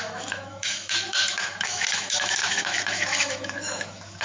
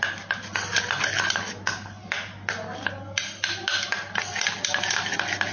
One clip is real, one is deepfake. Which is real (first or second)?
second